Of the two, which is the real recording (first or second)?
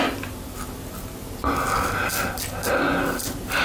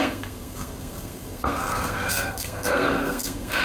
first